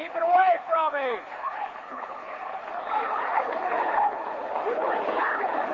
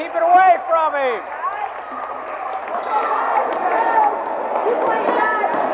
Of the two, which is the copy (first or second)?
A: first